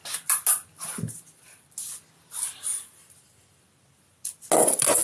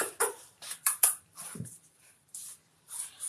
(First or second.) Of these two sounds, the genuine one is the first